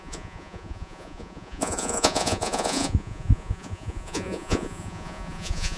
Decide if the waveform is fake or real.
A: fake